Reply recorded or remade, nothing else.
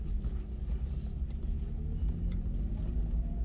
recorded